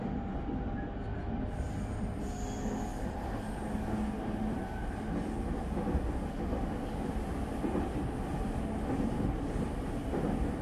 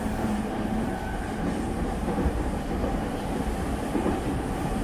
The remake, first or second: second